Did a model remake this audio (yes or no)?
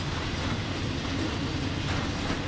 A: no